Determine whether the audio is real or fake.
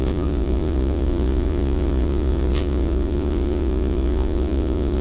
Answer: fake